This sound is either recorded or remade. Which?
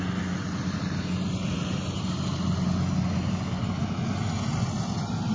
recorded